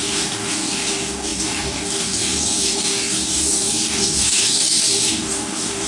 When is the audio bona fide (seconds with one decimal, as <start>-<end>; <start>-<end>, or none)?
none